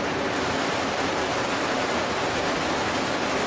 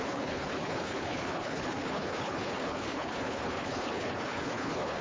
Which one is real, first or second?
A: first